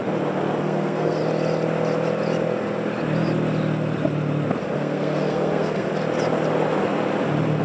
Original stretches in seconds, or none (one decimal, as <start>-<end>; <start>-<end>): 0.0-0.6; 1.2-4.6; 5.9-7.6